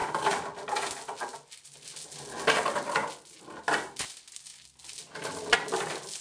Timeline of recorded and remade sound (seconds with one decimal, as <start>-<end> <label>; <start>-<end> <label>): 0.0-6.2 recorded